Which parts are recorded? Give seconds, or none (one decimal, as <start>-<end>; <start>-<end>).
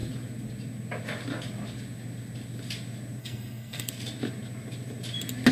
0.0-3.2; 3.9-5.5